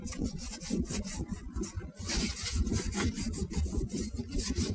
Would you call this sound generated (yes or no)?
yes